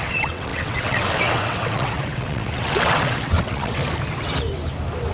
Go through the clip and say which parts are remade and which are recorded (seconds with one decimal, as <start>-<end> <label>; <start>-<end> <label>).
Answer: 0.0-3.8 remade; 3.8-5.1 recorded